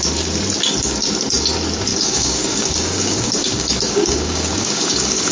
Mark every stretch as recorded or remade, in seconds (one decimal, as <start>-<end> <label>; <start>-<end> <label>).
0.0-1.9 recorded; 1.9-5.3 remade